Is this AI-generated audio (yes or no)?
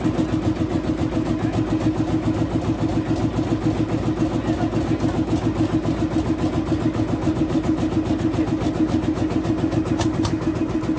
no